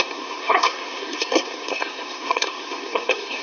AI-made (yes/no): yes